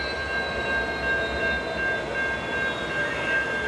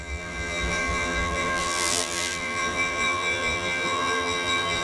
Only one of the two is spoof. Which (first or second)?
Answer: second